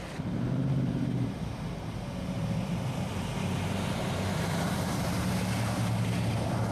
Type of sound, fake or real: real